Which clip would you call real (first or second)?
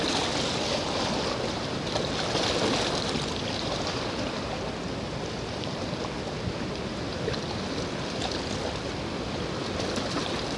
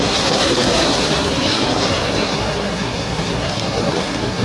first